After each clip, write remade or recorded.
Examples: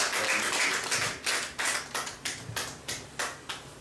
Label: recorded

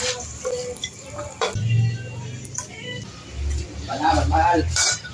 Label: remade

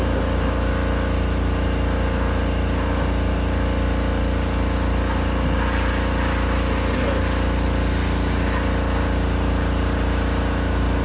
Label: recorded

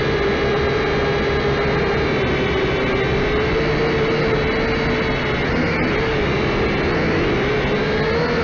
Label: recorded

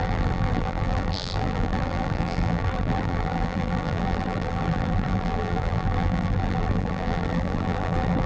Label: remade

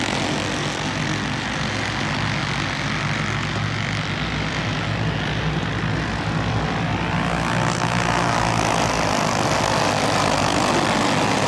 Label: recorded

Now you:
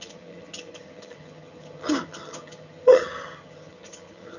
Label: remade